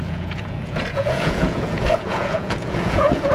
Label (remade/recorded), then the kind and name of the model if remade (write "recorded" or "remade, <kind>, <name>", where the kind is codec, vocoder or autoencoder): remade, vocoder, Vocos